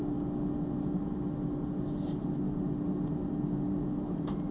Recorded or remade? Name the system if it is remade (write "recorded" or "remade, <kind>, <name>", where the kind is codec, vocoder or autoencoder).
recorded